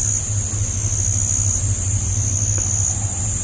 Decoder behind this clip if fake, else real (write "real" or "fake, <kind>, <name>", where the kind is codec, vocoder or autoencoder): real